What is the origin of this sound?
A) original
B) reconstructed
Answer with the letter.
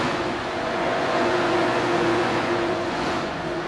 B